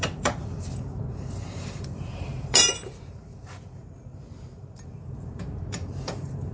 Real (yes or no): no